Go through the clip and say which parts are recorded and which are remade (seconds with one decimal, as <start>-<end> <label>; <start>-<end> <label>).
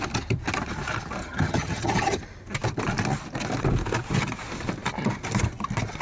0.0-1.2 recorded; 1.2-2.2 remade; 2.2-6.0 recorded